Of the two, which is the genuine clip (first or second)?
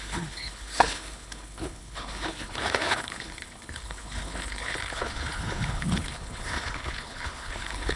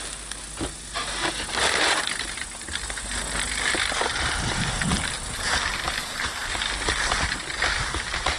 second